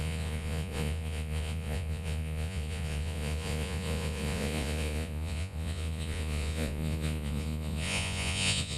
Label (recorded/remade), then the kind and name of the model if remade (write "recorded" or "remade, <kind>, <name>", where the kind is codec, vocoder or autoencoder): remade, vocoder, Vocos